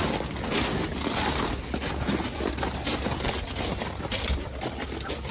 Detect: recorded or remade recorded